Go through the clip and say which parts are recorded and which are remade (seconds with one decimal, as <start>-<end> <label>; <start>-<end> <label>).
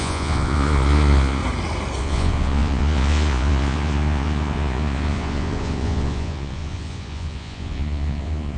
0.0-1.4 remade; 1.4-2.0 recorded; 2.0-8.6 remade